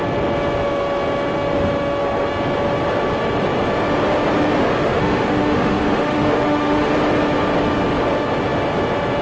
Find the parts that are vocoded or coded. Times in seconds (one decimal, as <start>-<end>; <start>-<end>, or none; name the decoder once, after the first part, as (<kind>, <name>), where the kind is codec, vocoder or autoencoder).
4.6-6.9 (autoencoder, DAC-VAE)